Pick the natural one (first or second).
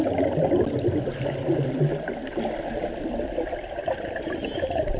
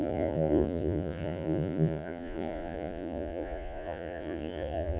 first